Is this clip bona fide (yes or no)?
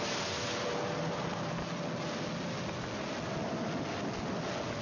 yes